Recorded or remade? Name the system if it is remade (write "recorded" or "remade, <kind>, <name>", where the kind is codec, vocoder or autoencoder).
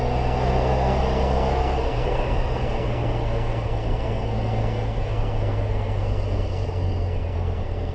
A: remade, codec, SNAC